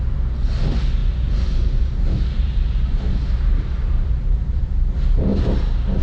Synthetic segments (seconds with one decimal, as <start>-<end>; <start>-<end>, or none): 1.0-4.6